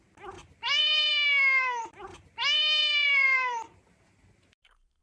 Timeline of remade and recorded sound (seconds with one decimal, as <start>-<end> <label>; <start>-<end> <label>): 0.0-0.4 recorded; 0.4-1.1 remade; 1.1-2.8 recorded; 2.8-5.0 remade